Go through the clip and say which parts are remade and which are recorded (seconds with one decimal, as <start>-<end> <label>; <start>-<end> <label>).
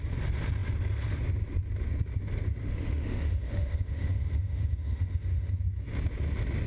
0.0-2.6 recorded; 2.6-5.5 remade; 5.5-6.7 recorded